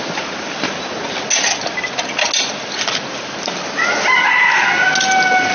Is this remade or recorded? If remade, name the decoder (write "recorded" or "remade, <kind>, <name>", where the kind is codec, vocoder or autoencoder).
recorded